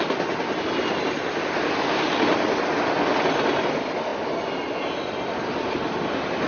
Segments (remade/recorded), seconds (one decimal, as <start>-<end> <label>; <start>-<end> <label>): 0.0-6.5 recorded